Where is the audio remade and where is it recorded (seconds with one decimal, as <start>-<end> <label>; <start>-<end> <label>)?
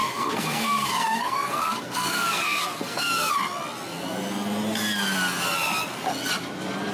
0.0-3.3 remade; 3.3-6.9 recorded